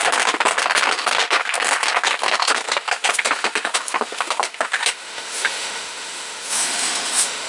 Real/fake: fake